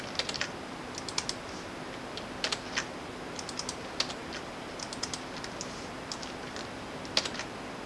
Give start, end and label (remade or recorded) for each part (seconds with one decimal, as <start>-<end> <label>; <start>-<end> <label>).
0.0-7.9 recorded